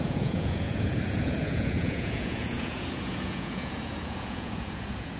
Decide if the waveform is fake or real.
fake